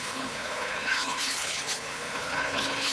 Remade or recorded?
remade